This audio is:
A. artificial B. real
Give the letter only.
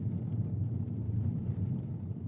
B